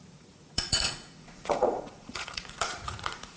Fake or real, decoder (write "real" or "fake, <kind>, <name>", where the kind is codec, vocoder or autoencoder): fake, vocoder, Vocos